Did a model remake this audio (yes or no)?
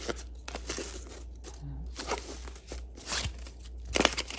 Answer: no